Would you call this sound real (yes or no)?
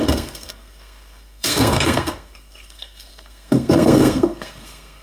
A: no